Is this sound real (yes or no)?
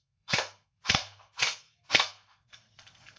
no